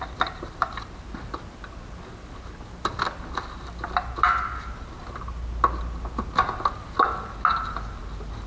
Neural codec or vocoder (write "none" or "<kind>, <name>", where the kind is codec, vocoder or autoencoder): none